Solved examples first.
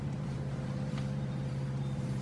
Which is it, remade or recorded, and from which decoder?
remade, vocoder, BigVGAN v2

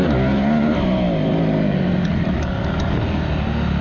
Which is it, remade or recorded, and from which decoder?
recorded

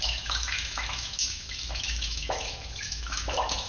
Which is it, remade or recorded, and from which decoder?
remade, autoencoder, DAC-VAE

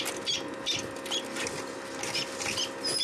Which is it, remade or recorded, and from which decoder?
recorded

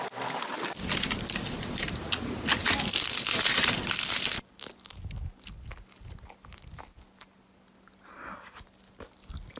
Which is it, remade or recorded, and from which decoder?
recorded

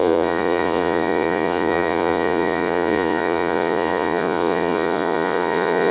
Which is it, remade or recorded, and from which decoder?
remade, vocoder, Vocos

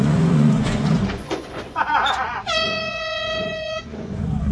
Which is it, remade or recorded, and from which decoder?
remade, vocoder, Vocos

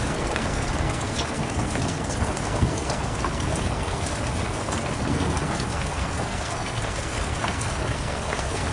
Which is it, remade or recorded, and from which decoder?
remade, codec, SNAC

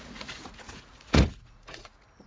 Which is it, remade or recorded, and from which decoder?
remade, vocoder, Vocos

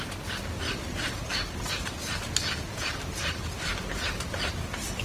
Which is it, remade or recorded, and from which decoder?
recorded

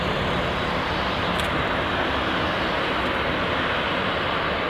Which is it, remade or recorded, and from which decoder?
recorded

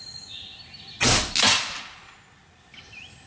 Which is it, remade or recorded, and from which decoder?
recorded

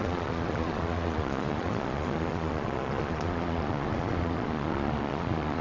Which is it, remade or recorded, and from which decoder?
remade, vocoder, Vocos